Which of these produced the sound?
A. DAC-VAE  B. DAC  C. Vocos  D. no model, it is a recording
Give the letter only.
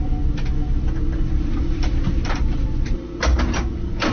D